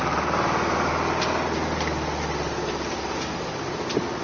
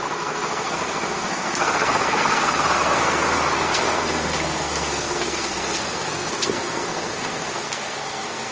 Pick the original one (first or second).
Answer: first